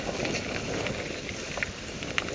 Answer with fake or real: real